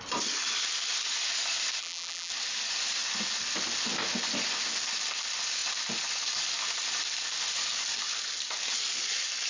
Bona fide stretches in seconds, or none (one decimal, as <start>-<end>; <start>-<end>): 0.0-1.8; 2.3-9.5